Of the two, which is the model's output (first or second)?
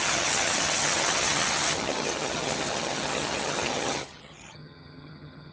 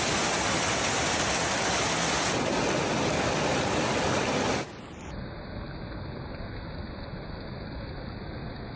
first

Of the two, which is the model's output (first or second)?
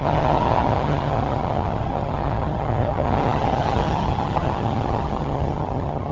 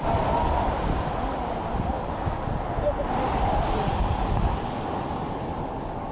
first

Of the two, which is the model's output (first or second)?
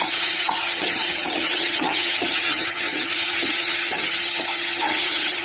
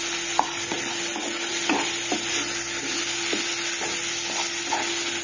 first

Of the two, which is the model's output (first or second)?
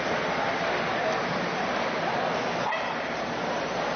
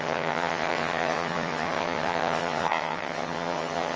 second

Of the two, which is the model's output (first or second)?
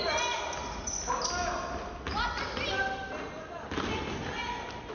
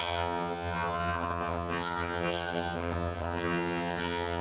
second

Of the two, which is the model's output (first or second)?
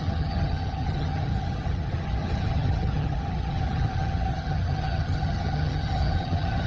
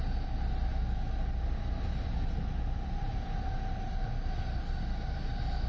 first